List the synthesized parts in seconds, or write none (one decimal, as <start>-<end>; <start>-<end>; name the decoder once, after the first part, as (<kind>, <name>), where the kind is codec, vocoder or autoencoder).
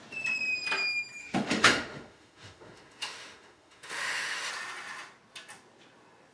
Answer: 1.2-4.5 (autoencoder, DAC-VAE)